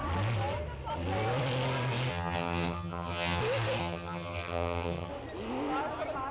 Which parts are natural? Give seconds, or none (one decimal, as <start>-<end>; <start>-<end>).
0.0-2.1; 3.4-3.8; 5.1-6.3